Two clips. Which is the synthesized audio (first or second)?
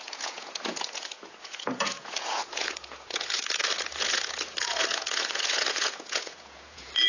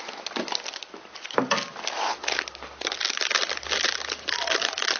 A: first